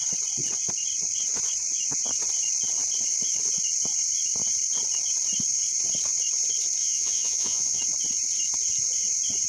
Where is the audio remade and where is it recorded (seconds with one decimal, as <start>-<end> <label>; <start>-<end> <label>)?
0.0-6.8 recorded; 6.8-7.8 remade; 7.8-9.5 recorded